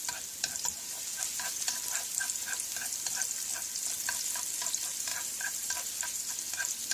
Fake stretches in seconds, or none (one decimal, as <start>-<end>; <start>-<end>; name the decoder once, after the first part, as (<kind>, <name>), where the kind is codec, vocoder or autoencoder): 5.1-6.3 (vocoder, BigVGAN v2)